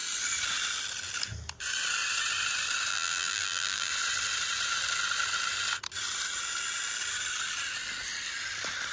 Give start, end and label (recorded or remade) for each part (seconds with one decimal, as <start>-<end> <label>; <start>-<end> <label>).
0.0-2.9 recorded; 2.9-3.9 remade; 3.9-8.9 recorded